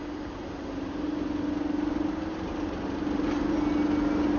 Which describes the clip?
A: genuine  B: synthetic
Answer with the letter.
A